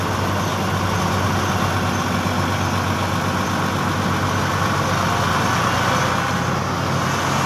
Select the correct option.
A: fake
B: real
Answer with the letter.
B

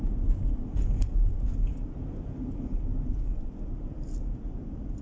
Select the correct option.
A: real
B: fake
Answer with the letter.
A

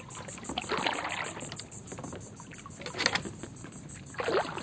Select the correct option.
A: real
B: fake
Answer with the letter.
A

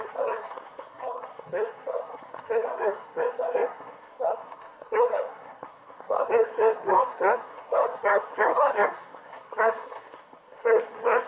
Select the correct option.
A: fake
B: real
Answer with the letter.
A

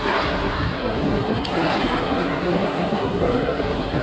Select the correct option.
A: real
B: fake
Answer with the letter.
B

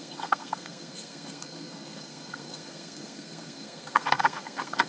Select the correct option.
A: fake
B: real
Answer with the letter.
A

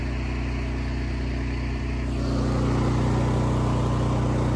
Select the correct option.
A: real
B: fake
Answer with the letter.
A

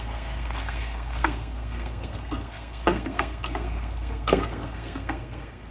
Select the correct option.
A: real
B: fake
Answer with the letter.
B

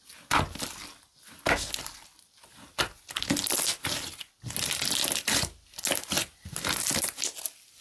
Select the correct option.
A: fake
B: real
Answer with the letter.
B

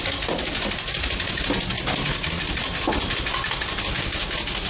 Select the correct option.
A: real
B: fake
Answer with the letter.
A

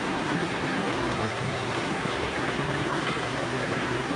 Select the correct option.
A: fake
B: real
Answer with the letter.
A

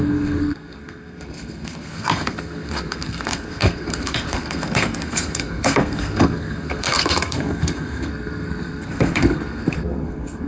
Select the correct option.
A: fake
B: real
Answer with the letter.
A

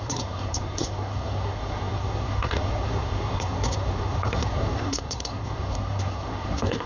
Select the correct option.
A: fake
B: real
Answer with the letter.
A